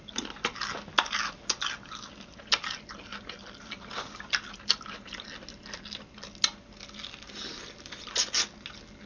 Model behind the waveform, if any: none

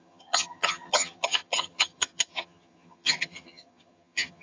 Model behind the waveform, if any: vocoder, HiFi-GAN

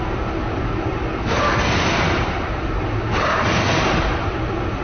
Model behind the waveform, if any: none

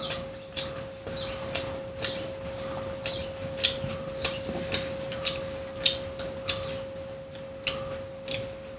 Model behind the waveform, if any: none